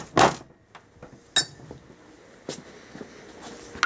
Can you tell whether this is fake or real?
real